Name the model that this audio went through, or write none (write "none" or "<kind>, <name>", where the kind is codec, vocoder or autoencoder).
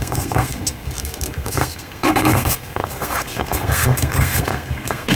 codec, SNAC